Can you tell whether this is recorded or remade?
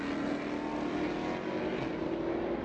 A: recorded